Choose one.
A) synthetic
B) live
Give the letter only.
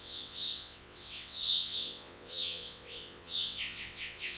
A